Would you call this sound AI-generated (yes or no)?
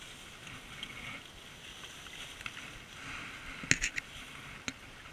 no